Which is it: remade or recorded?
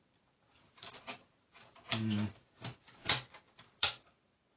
remade